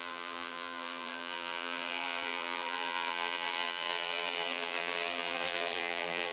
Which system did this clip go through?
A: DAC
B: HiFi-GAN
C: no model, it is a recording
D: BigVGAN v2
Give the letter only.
D